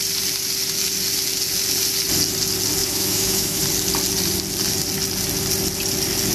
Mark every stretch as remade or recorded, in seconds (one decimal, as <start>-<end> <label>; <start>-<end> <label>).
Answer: 0.0-2.8 recorded; 2.8-3.6 remade; 3.6-6.3 recorded

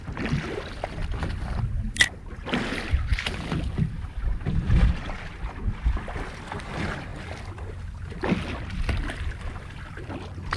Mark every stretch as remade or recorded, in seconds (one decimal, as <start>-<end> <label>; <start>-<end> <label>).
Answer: 0.0-10.6 recorded

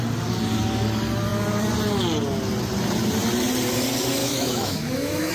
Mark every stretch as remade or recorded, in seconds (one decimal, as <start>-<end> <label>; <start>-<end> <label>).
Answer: 0.0-4.2 recorded; 4.2-5.3 remade

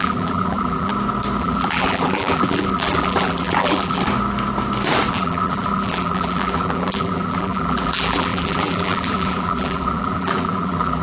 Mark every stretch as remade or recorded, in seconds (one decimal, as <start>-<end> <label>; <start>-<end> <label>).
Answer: 0.0-0.9 remade; 0.9-1.4 recorded; 1.4-4.0 remade; 4.0-5.1 recorded; 5.1-11.0 remade

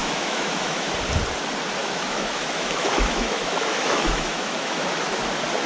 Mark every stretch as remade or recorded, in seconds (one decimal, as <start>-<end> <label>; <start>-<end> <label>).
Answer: 0.0-0.9 remade; 0.9-1.8 recorded; 1.8-5.2 remade; 5.2-5.7 recorded

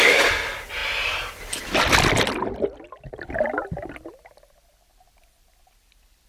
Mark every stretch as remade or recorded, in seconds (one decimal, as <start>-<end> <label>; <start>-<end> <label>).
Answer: 0.0-6.3 recorded